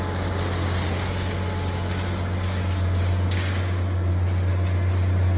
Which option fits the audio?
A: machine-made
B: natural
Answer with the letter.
B